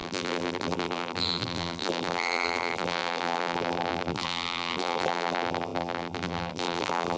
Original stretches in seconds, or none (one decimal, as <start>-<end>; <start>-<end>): none